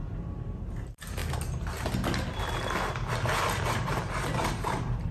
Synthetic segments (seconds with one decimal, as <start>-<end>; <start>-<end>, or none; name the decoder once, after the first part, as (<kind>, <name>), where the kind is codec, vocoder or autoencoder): 0.0-1.2 (vocoder, BigVGAN v2); 3.7-5.1